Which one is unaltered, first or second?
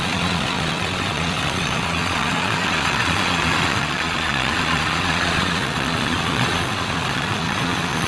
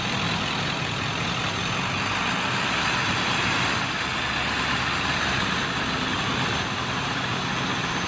second